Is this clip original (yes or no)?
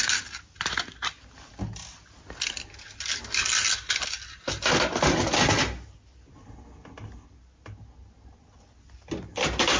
yes